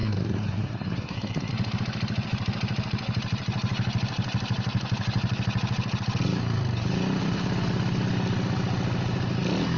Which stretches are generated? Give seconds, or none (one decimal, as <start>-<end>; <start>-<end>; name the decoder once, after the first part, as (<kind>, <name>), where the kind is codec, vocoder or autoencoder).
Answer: 0.0-1.5 (codec, SNAC)